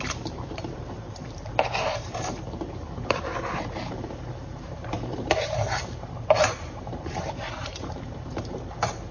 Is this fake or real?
fake